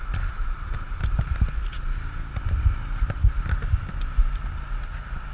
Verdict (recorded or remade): recorded